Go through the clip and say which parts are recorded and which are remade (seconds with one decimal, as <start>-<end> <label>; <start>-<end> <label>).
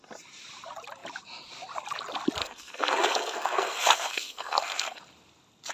0.0-2.4 recorded; 2.4-5.0 remade; 5.0-5.7 recorded